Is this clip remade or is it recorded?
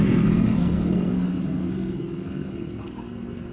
remade